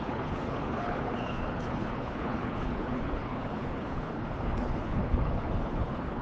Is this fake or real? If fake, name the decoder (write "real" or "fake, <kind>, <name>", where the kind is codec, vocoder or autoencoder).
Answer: fake, codec, HILCodec